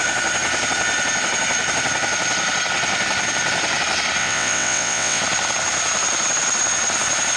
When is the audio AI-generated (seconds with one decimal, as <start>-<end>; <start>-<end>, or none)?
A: 4.2-5.2